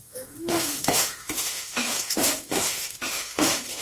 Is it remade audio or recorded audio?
remade